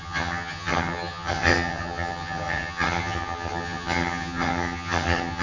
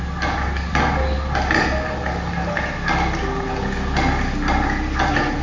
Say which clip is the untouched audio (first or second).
second